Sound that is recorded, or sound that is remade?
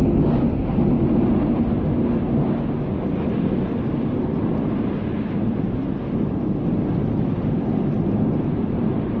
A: recorded